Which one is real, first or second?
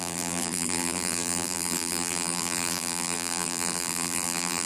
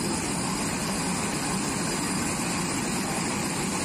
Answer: second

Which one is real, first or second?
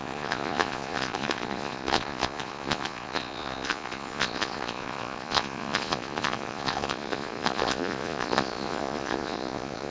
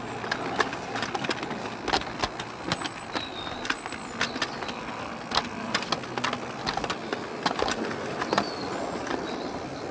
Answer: second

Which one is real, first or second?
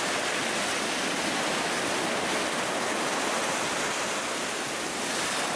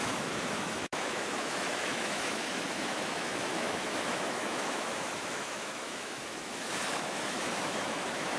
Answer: first